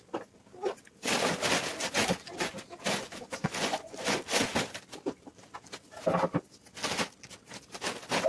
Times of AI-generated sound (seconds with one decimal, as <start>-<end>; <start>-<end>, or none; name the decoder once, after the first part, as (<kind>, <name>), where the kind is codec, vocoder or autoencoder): 1.8-2.5 (vocoder, Vocos); 3.0-4.5